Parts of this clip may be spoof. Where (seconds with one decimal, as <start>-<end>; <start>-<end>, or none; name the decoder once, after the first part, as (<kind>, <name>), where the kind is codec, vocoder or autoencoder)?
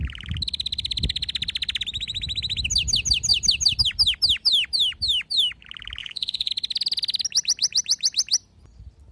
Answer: 6.0-6.5 (vocoder, Vocos)